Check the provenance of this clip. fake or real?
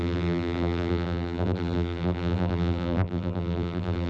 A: fake